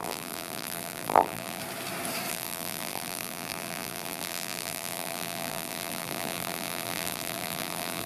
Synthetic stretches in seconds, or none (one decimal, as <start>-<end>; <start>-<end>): 0.0-1.6; 2.3-8.1

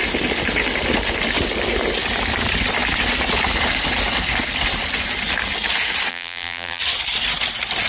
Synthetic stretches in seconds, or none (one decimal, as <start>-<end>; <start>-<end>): 6.1-6.8

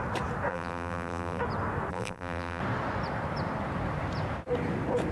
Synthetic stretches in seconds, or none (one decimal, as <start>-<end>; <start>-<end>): 0.5-1.4; 1.9-2.6

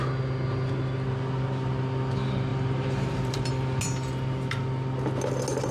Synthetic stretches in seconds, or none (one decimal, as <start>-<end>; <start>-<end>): 2.5-3.5

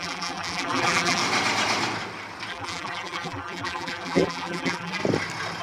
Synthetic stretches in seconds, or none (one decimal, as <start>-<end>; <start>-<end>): 0.0-1.2; 2.5-5.0

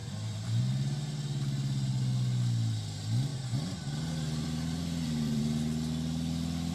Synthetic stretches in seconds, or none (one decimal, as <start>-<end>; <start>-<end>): 0.0-0.6; 3.3-5.4

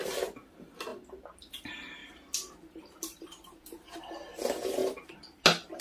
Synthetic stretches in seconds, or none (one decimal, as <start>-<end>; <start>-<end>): 2.0-4.1